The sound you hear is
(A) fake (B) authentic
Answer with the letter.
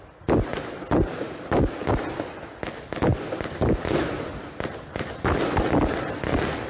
B